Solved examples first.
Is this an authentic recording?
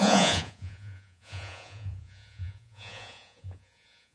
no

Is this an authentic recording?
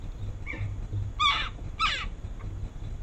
yes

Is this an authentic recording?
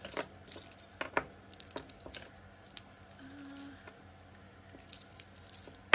yes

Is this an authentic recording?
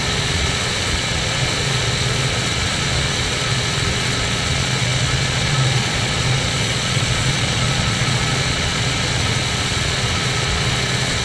no